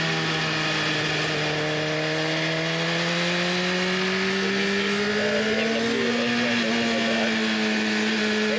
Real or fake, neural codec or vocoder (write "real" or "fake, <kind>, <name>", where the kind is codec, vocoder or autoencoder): real